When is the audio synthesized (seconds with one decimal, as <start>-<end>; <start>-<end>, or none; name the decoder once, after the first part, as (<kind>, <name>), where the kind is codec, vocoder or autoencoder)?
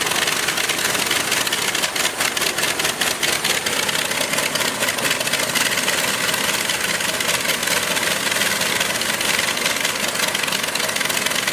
none